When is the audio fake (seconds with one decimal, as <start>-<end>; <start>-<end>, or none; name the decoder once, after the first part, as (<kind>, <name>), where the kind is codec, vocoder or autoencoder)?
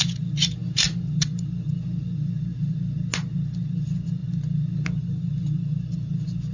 none